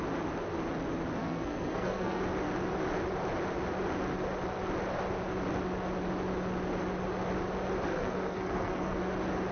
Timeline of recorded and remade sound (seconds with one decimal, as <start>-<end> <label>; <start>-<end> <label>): 0.0-1.2 recorded; 1.2-2.2 remade; 2.2-7.9 recorded; 7.9-9.0 remade; 9.0-9.5 recorded